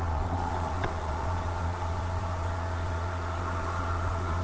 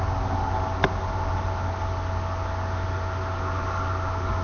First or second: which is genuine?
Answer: second